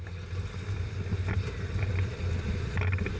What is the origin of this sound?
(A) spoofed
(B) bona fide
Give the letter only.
B